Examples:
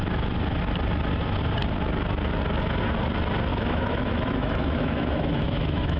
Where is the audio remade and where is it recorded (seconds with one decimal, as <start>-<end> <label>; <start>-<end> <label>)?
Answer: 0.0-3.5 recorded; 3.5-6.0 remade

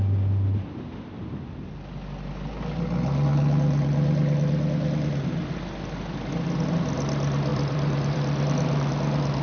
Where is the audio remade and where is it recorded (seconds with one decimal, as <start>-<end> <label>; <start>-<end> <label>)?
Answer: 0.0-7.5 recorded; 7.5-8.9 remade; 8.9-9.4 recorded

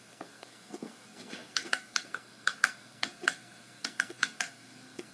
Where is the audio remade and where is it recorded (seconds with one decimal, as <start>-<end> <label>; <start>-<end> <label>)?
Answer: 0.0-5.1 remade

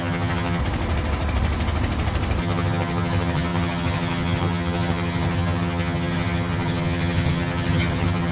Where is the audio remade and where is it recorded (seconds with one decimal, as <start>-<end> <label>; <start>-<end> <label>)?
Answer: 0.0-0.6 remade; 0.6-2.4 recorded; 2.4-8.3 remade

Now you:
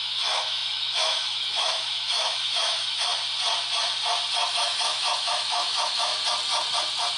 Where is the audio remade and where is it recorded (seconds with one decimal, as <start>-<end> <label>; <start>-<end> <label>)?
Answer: 0.0-3.1 remade; 3.1-4.5 recorded; 4.5-6.1 remade; 6.1-7.2 recorded